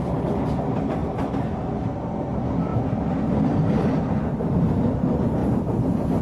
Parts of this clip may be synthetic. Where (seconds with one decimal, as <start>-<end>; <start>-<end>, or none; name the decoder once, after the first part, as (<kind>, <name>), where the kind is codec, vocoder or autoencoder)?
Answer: 0.0-1.0 (vocoder, BigVGAN v2); 2.2-6.2